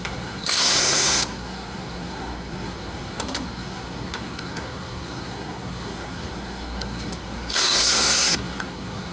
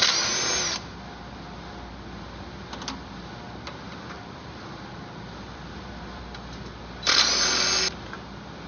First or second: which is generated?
first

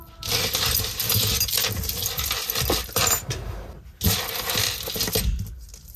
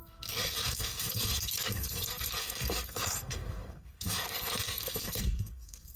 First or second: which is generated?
second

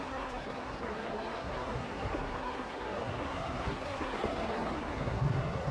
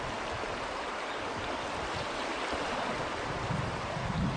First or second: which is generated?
first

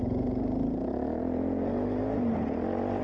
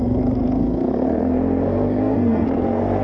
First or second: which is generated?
second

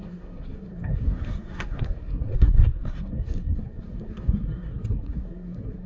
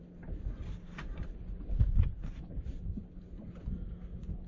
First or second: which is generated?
first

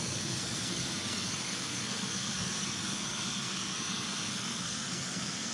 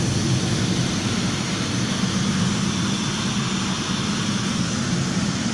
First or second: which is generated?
first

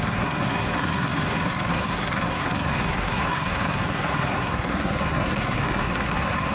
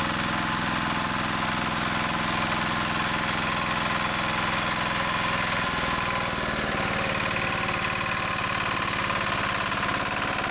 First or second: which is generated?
first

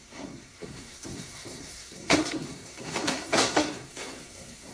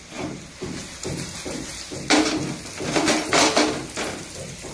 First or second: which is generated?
first